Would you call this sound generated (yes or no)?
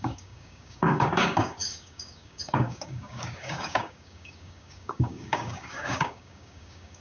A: yes